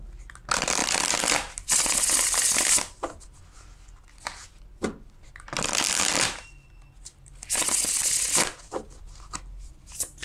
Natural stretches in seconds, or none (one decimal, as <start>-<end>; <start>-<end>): 0.0-10.2